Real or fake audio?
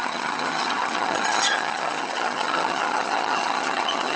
fake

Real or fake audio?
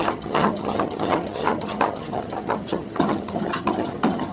fake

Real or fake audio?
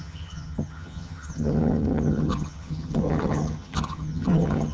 fake